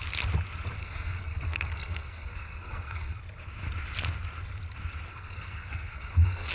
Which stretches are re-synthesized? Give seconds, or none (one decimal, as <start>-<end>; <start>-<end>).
0.8-3.2; 5.1-6.5

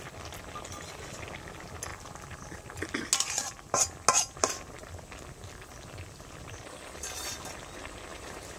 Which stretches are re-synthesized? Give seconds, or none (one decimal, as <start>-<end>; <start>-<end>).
8.1-8.6

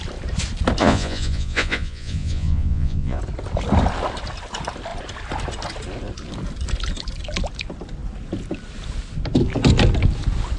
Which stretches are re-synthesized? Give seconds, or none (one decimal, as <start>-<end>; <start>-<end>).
0.8-3.2

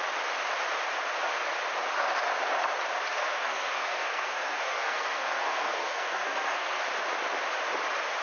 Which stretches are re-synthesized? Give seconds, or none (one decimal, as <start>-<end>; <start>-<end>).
3.1-6.8

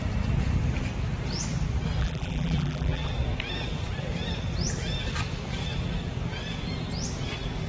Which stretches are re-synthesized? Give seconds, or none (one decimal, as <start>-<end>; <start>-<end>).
2.0-3.1

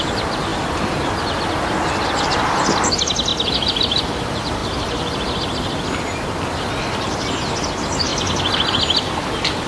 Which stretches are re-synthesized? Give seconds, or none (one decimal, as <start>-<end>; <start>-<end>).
none

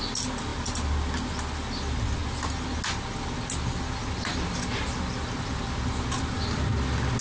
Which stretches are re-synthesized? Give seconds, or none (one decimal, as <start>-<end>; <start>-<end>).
none